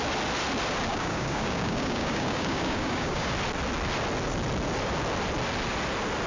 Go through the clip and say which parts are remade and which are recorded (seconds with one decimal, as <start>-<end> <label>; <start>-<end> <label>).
0.0-0.9 recorded; 0.9-3.3 remade; 3.3-6.3 recorded